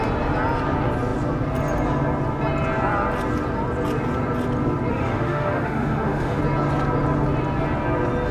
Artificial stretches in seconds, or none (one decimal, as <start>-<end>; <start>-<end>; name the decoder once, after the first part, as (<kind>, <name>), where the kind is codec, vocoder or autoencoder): 4.9-6.4 (autoencoder, DAC-VAE)